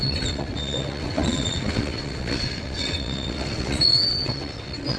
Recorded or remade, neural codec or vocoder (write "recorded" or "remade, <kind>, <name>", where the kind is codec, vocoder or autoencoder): remade, vocoder, WaveNeXt